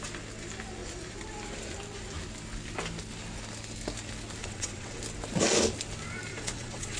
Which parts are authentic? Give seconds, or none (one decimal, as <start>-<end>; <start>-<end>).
0.0-4.4; 5.0-6.3

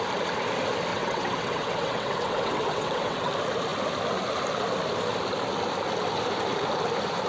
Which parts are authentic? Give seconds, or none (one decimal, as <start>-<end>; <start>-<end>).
0.0-0.9; 3.3-7.3

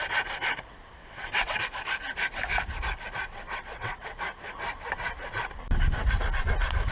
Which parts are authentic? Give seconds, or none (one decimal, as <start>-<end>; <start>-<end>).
0.0-1.0; 1.6-3.2; 4.2-6.9

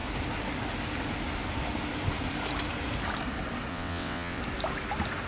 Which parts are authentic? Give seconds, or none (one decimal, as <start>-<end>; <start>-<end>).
0.0-3.7; 4.4-5.3